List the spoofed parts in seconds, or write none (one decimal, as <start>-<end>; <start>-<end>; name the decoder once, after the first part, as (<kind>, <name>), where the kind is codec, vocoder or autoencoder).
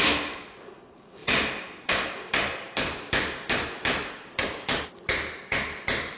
1.2-4.9 (vocoder, BigVGAN v2)